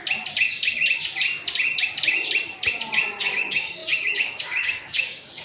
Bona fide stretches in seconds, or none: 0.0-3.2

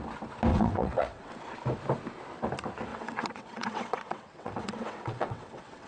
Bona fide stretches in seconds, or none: 0.0-0.5; 1.3-2.9

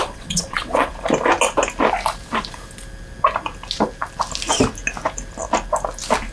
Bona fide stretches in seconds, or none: 0.9-6.3

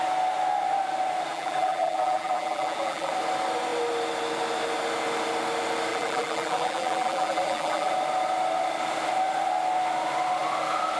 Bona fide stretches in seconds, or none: 0.0-1.3; 3.1-5.9; 7.9-11.0

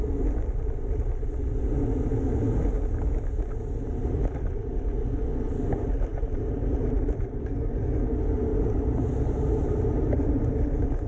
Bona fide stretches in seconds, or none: 0.0-6.1; 7.5-8.5

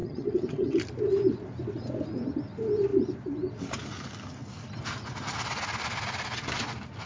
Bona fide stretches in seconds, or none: 0.8-7.1

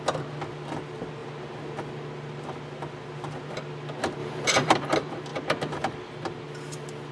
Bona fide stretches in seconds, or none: 0.0-4.2; 4.7-5.3

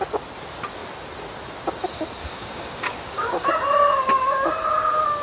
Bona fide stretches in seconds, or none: 0.0-2.2; 3.5-5.2